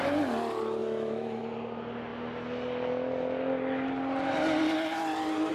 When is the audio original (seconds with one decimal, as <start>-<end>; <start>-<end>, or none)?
0.0-0.8; 1.4-5.5